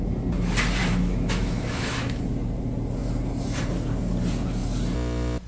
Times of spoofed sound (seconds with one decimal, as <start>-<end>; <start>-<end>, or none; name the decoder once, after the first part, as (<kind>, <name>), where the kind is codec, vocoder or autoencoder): 0.8-2.2 (autoencoder, DAC-VAE)